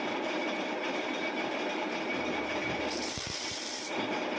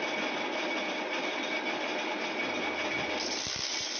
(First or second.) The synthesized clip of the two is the first